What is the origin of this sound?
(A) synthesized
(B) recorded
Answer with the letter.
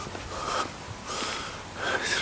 B